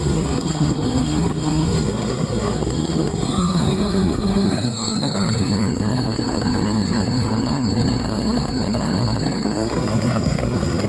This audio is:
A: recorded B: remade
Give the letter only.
B